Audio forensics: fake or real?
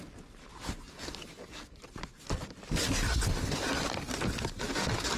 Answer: real